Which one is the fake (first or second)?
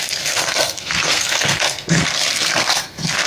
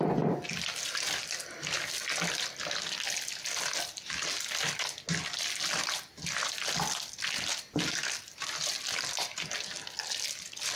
first